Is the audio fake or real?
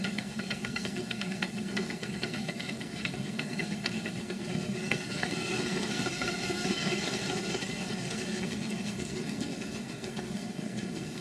fake